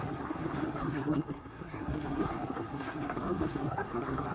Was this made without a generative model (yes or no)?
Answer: no